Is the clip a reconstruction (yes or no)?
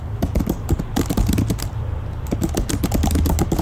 no